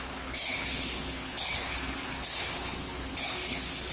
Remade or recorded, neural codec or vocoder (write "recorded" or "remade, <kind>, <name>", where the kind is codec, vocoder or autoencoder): remade, codec, HILCodec